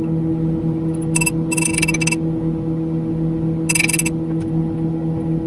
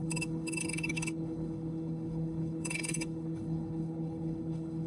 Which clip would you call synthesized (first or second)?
second